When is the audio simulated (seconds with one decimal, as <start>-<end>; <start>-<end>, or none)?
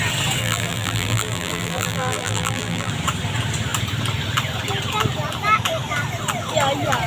0.4-2.9